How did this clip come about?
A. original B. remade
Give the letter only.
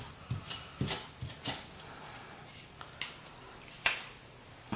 A